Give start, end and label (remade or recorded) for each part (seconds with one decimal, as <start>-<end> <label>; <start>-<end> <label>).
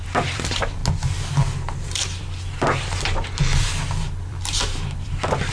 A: 0.0-0.8 remade; 0.8-1.8 recorded; 1.8-5.5 remade